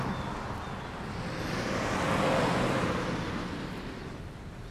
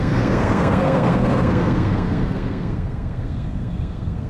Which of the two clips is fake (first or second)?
second